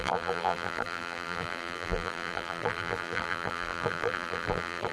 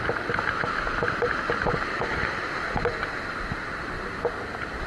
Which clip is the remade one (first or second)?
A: first